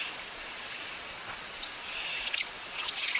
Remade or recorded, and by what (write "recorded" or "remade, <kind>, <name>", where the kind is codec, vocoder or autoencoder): remade, vocoder, Vocos